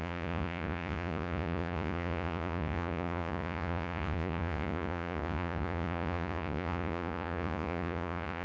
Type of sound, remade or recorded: remade